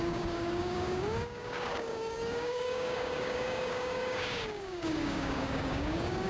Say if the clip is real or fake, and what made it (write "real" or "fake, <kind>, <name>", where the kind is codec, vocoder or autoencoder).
fake, codec, DAC